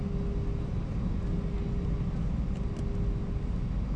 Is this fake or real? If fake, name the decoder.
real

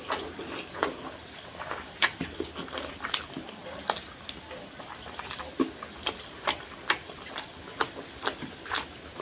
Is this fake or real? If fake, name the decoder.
real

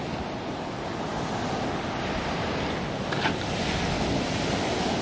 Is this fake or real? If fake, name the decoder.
real